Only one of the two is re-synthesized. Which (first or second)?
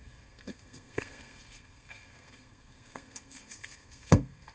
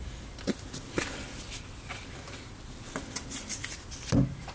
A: first